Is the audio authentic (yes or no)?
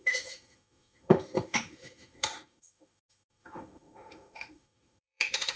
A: no